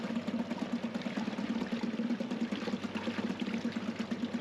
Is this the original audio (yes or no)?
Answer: yes